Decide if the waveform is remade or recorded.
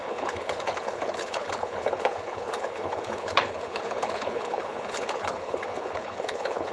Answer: remade